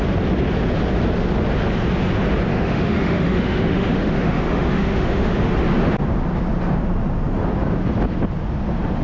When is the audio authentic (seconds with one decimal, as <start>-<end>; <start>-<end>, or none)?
0.0-2.5; 5.5-9.0